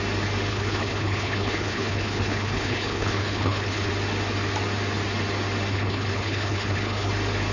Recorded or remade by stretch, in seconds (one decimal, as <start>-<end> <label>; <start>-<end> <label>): 0.0-0.5 recorded; 0.5-3.9 remade; 3.9-5.7 recorded; 5.7-7.1 remade; 7.1-7.5 recorded